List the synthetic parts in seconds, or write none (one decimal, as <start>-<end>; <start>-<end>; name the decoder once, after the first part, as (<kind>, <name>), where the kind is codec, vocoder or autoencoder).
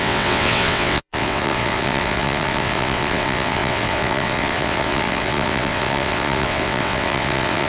0.0-7.7 (vocoder, WaveNeXt)